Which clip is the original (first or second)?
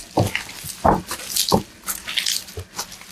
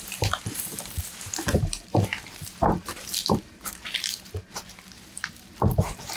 first